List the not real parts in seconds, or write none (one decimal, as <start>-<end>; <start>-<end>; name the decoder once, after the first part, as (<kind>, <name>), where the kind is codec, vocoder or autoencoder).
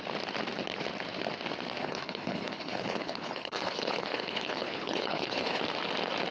1.8-5.6 (codec, HILCodec)